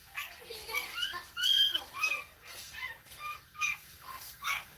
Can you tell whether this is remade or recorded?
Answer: remade